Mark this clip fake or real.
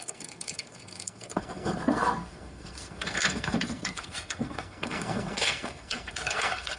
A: fake